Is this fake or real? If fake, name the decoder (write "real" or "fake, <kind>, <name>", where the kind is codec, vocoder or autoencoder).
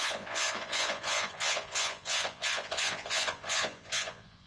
fake, vocoder, Vocos